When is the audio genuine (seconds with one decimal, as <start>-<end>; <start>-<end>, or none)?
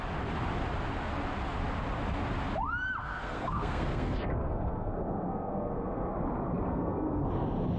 0.0-3.0; 6.1-6.7; 7.3-7.8